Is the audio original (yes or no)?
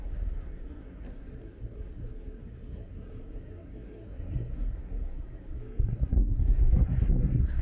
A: no